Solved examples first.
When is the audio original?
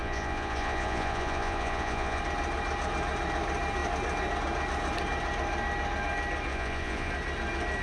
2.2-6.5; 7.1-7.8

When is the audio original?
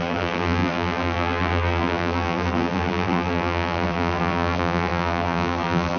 none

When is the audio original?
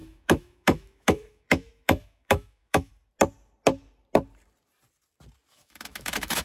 2.9-5.5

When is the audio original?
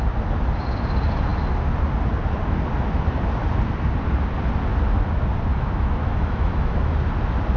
0.0-5.5; 6.9-7.6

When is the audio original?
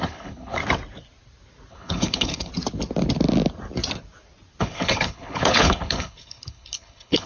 0.6-1.7; 2.5-4.6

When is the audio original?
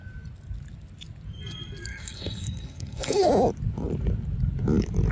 0.0-1.9; 3.3-5.1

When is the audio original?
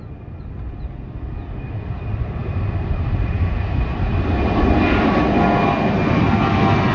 0.0-2.4; 5.2-6.9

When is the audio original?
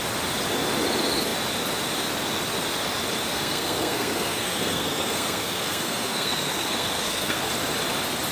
0.0-3.3; 7.5-8.3